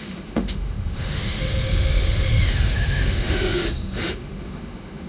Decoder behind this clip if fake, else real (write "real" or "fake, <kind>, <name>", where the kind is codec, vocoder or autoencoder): fake, autoencoder, DAC-VAE